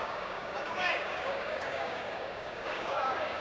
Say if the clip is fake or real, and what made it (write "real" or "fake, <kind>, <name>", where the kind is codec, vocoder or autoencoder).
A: fake, codec, DAC